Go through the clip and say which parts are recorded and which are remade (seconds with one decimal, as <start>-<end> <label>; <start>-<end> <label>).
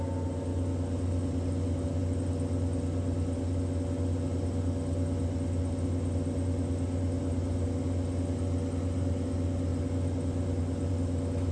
0.0-11.5 recorded